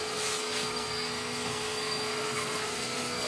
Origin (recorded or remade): remade